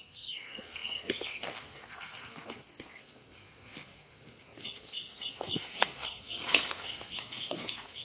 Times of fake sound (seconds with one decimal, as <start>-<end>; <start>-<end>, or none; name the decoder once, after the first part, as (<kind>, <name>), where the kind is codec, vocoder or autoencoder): 0.0-8.0 (codec, SNAC)